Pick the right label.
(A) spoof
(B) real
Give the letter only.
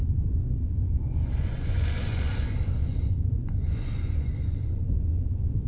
A